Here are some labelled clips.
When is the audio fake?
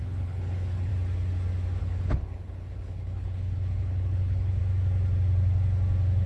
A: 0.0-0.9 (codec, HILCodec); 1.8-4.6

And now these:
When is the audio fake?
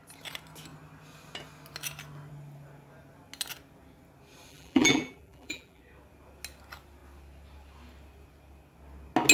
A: 4.5-5.8 (vocoder, BigVGAN v2)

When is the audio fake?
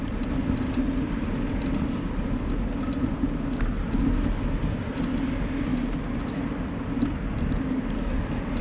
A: none